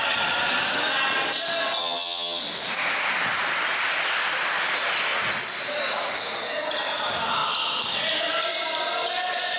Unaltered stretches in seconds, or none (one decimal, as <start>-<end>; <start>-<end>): 0.0-1.8; 2.4-9.6

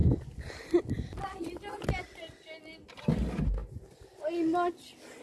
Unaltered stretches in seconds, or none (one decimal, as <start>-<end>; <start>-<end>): 0.0-5.2

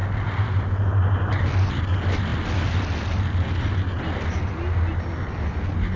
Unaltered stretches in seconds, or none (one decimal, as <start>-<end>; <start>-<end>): 0.0-6.0

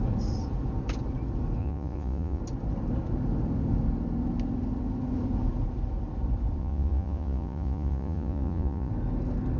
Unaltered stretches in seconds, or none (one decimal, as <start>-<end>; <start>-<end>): 0.0-1.6; 2.4-6.6; 8.9-9.6

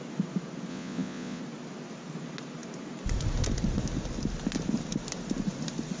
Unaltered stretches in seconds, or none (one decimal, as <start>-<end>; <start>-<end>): 0.0-0.7; 1.4-6.0

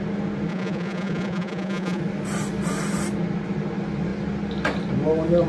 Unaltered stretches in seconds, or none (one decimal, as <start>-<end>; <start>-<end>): 0.0-0.5; 2.0-5.5

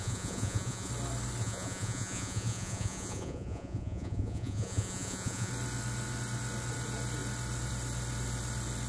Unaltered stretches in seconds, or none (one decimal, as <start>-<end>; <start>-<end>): 0.9-1.4; 5.5-8.9